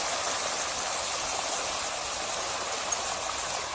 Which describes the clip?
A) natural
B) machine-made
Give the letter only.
A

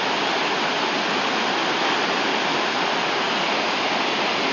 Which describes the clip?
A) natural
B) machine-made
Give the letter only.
A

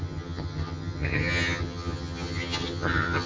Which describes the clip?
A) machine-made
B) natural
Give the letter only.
A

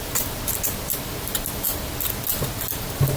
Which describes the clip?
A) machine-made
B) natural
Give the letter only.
B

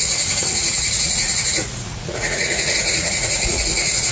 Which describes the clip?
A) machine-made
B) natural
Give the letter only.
A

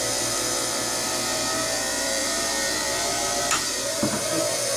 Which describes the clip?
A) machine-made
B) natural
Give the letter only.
A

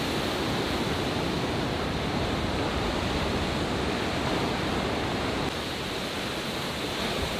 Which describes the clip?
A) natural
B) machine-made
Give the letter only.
A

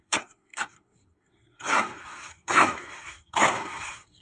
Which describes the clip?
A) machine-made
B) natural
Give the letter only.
A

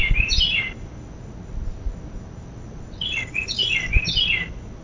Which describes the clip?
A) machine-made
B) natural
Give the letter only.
B